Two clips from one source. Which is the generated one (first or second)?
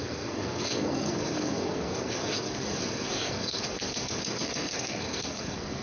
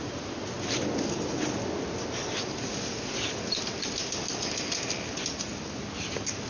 first